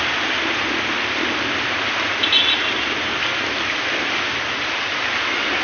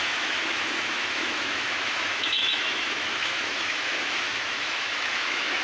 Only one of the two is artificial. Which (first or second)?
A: second